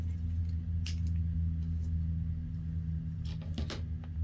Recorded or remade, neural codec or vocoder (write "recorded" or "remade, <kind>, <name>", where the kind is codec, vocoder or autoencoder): recorded